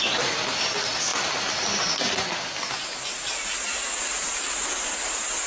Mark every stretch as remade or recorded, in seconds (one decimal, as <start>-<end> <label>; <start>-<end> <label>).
0.0-5.5 recorded